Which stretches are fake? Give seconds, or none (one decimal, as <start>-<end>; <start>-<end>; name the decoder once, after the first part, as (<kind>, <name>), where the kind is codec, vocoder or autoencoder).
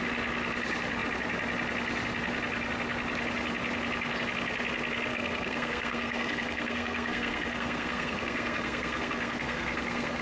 5.1-10.2 (codec, SNAC)